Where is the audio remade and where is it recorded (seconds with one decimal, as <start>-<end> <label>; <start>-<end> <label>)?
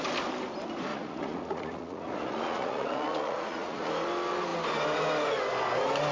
0.0-0.9 recorded; 0.9-3.9 remade; 3.9-6.1 recorded